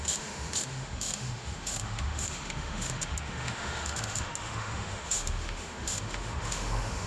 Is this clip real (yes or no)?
no